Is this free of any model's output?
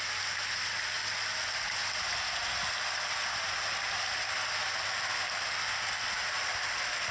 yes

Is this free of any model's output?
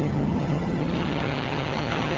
no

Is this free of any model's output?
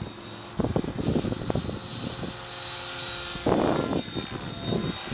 yes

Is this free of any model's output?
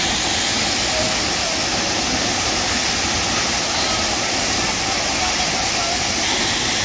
yes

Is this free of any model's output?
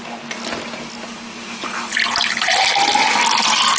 yes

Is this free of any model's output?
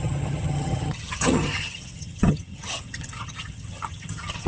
no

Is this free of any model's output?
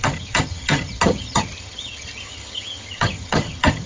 no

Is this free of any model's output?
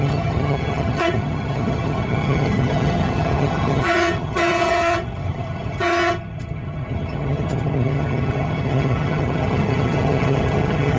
no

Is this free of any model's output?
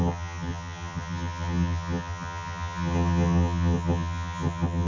no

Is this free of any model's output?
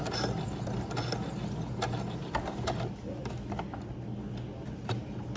yes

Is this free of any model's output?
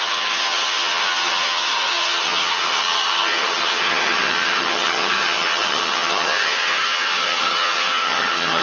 no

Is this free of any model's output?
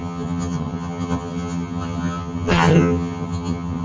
no